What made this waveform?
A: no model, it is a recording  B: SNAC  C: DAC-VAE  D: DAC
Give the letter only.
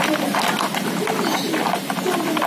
A